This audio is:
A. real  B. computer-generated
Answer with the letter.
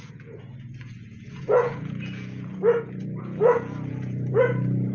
B